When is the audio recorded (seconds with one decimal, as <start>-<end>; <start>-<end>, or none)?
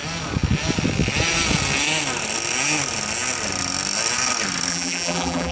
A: 0.0-4.7